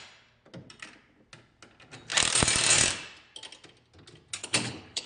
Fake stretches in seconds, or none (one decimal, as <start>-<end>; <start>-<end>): 4.4-5.1